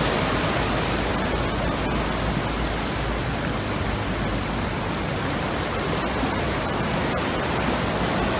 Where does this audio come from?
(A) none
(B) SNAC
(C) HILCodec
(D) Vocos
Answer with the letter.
A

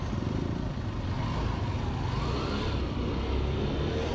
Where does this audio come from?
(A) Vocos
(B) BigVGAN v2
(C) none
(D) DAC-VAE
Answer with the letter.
C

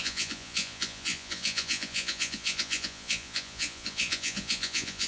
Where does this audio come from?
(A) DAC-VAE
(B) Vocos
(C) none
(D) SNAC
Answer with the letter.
B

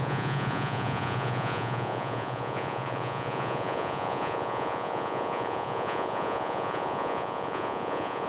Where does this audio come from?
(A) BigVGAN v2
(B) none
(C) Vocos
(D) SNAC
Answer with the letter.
C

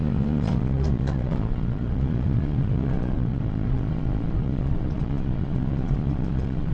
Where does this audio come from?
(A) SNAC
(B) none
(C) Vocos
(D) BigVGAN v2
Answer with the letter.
C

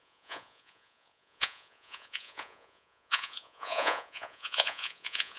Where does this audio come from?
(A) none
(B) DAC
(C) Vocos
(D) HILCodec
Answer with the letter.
C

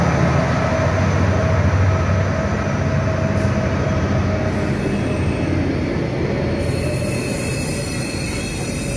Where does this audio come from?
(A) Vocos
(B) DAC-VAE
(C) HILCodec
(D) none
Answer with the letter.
D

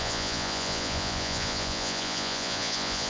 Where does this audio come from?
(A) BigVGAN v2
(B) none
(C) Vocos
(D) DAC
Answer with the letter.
C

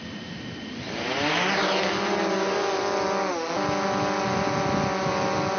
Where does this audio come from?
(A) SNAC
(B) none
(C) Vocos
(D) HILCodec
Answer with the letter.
B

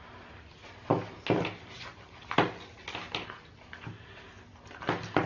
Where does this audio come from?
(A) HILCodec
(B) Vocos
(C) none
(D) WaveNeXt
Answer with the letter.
C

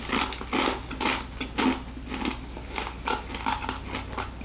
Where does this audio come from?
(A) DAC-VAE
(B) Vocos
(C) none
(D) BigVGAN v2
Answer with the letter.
C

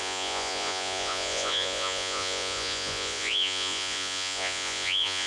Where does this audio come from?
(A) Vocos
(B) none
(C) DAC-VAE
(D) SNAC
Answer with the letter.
A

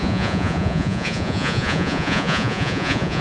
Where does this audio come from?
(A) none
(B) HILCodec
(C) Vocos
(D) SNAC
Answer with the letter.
C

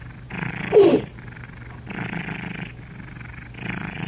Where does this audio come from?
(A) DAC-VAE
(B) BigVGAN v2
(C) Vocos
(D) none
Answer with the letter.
D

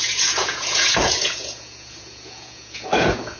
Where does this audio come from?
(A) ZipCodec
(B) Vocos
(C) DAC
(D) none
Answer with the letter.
B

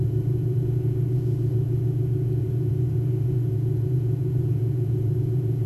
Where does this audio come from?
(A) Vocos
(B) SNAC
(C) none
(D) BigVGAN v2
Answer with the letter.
A